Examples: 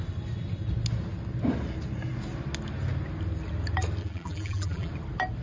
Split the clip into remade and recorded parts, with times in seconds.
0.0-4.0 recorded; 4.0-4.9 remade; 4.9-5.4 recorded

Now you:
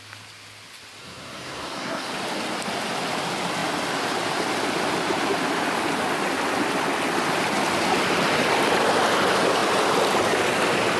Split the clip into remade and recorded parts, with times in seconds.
0.0-1.0 recorded; 1.0-2.1 remade; 2.1-11.0 recorded

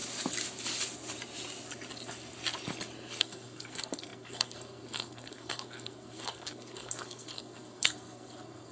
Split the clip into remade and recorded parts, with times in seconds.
0.0-3.2 recorded; 3.2-8.7 remade